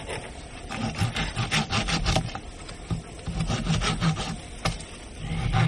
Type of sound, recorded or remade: recorded